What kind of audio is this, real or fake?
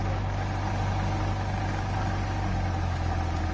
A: real